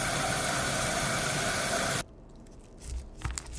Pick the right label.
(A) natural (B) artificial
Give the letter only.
B